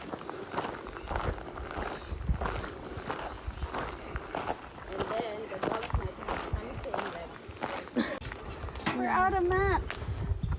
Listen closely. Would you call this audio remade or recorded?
recorded